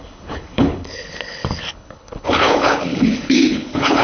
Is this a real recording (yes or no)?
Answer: no